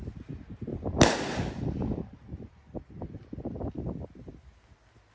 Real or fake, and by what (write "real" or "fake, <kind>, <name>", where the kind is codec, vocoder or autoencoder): real